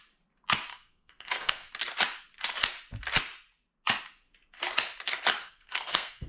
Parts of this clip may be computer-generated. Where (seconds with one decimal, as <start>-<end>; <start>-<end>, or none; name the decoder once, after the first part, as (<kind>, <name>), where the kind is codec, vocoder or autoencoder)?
0.7-1.7 (codec, SNAC); 5.4-6.3